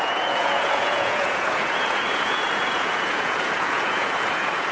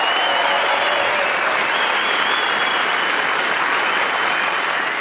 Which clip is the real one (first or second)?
second